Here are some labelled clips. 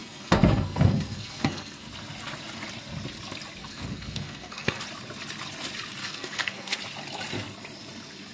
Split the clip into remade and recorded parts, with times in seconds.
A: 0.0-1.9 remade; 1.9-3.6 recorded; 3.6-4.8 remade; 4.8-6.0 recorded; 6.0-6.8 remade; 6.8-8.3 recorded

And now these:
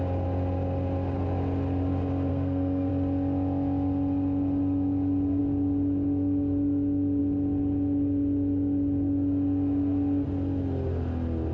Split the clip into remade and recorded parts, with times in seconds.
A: 0.0-2.3 recorded; 2.3-2.9 remade; 2.9-11.5 recorded

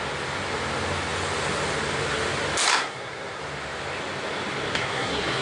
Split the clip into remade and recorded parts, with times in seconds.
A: 0.0-2.7 recorded; 2.7-3.4 remade; 3.4-4.7 recorded; 4.7-5.4 remade

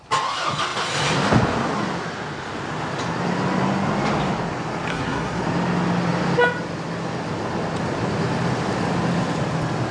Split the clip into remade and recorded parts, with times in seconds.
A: 0.0-4.9 recorded; 4.9-5.4 remade; 5.4-9.9 recorded

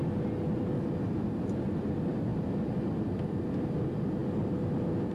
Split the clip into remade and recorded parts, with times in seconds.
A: 0.0-5.1 recorded